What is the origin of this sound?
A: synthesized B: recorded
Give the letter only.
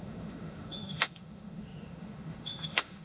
A